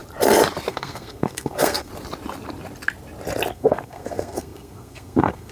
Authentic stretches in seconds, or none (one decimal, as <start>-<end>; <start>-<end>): 0.0-0.7; 1.9-3.5